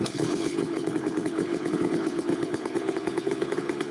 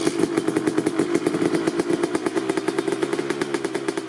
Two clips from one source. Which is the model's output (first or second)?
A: first